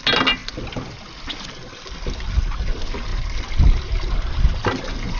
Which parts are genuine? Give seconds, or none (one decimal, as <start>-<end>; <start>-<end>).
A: 0.0-5.2